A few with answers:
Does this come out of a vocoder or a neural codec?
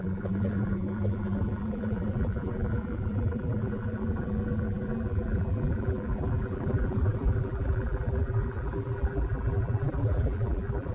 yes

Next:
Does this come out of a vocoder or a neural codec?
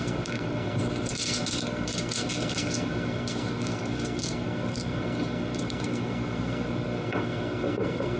yes